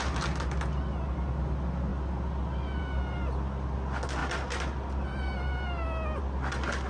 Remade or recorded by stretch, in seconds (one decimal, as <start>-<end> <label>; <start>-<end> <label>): 0.0-6.9 recorded